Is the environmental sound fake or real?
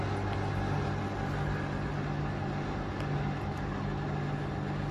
real